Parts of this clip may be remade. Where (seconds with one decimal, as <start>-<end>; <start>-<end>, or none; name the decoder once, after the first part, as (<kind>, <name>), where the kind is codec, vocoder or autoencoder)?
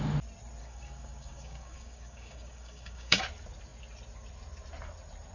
0.6-3.2 (codec, DAC)